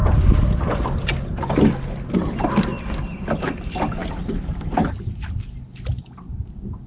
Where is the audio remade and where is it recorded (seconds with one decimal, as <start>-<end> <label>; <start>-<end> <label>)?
0.0-6.9 recorded